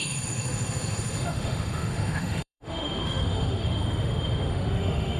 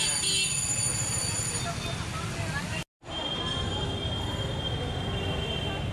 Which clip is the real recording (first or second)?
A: second